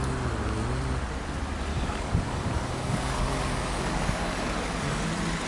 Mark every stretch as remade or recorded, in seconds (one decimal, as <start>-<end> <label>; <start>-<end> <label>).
0.0-1.7 recorded; 1.7-5.0 remade; 5.0-5.5 recorded